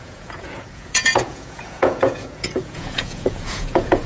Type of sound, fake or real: fake